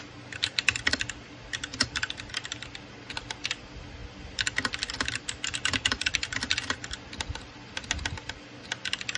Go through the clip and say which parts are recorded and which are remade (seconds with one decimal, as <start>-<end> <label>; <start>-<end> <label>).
0.0-9.2 recorded